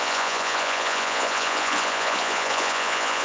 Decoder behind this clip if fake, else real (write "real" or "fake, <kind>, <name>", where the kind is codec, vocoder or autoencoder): fake, vocoder, Vocos